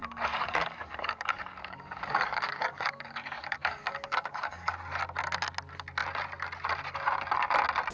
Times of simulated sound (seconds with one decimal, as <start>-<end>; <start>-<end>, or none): 0.0-4.7